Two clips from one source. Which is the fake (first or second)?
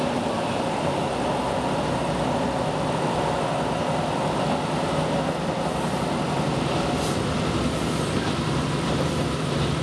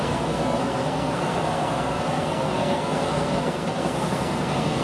second